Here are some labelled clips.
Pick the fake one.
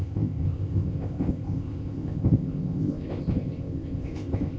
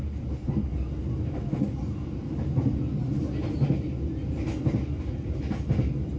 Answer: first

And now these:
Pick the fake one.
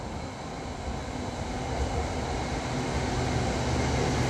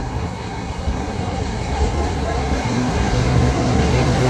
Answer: second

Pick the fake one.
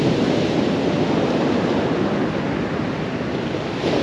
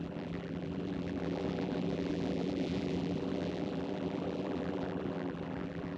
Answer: second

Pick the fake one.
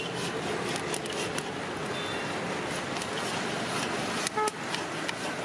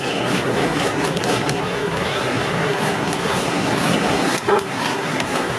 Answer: second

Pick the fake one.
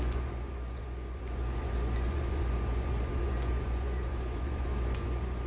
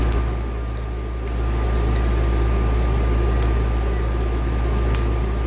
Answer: first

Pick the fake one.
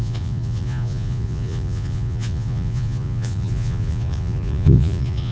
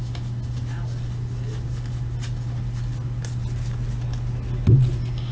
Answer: first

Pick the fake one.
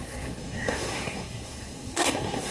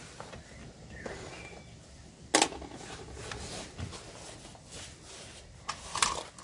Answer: first